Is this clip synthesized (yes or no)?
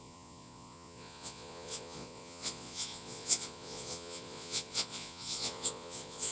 yes